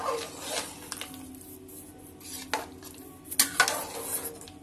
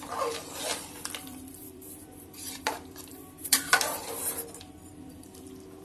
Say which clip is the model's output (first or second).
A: second